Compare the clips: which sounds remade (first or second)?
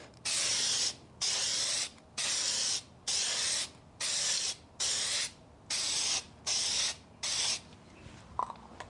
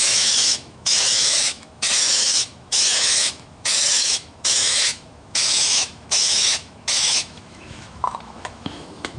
second